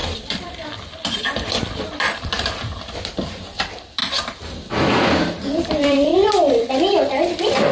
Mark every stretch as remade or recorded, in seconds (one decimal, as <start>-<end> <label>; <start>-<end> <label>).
0.0-4.0 remade; 4.0-5.5 recorded; 5.5-7.7 remade